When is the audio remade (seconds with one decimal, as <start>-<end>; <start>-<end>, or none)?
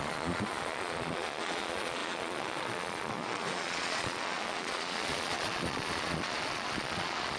0.0-7.4